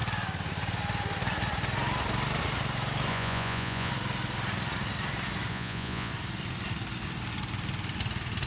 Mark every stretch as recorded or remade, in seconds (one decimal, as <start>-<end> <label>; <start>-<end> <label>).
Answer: 0.0-3.1 recorded; 3.1-3.9 remade; 3.9-5.5 recorded; 5.5-6.1 remade; 6.1-8.5 recorded